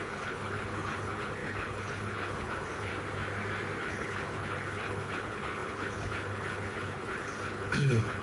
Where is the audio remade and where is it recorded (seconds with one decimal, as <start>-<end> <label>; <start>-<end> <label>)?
0.0-2.9 remade; 2.9-3.8 recorded; 3.8-8.2 remade